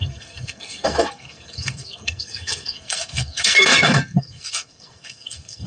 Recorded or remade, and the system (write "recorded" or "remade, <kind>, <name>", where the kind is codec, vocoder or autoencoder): remade, codec, SNAC